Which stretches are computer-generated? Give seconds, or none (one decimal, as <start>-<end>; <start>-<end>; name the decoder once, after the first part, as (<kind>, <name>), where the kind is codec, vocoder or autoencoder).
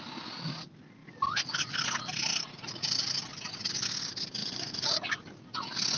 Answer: 4.4-4.9 (vocoder, Vocos)